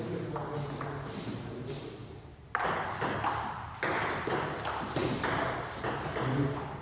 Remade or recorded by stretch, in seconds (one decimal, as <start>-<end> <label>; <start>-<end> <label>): 0.0-6.8 recorded